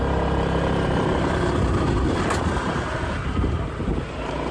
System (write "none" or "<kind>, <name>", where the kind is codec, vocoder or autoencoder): vocoder, BigVGAN v2